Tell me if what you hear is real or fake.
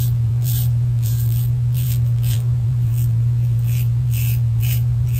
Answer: fake